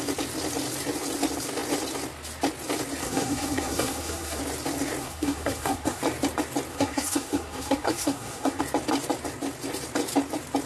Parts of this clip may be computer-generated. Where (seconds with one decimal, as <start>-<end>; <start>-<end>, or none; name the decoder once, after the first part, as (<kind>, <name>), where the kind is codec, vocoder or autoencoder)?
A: 3.0-4.4 (codec, SNAC); 5.0-6.0; 6.7-8.6